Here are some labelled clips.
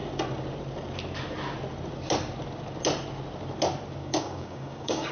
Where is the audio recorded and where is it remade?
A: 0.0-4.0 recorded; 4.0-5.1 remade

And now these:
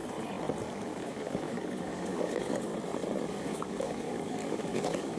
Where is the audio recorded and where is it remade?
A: 0.0-0.6 recorded; 0.6-2.7 remade; 2.7-3.3 recorded; 3.3-5.2 remade